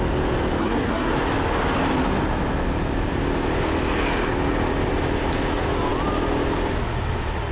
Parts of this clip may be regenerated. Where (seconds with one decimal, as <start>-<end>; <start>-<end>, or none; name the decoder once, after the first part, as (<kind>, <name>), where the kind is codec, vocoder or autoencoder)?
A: 0.6-1.1 (codec, SNAC)